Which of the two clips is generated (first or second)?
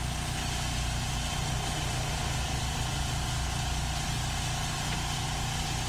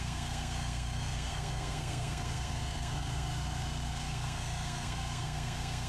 second